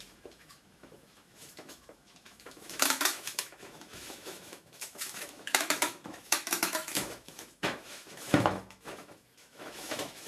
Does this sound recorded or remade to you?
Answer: remade